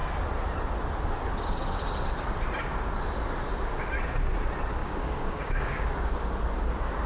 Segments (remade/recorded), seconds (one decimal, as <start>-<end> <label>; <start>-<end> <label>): 0.0-4.8 recorded; 4.8-6.1 remade; 6.1-7.1 recorded